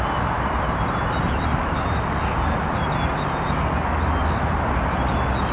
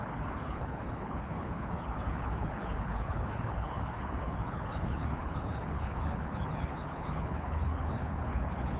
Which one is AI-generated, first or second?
second